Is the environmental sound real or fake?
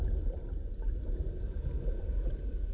real